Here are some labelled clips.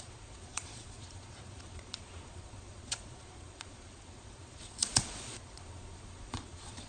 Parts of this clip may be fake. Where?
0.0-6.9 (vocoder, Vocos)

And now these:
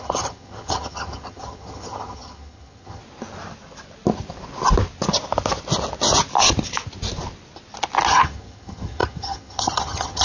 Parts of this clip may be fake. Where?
0.0-3.0 (vocoder, HiFi-GAN); 8.1-10.2

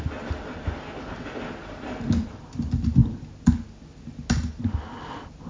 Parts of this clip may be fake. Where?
none

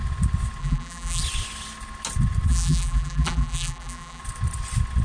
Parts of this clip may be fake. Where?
0.6-1.2 (vocoder, BigVGAN v2); 2.5-4.2

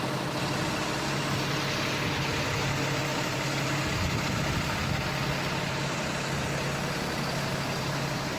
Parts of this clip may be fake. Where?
none